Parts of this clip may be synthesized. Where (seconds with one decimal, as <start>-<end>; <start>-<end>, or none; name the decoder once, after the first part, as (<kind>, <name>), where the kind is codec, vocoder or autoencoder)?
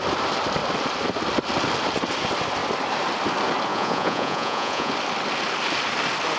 3.7-4.9 (vocoder, Vocos)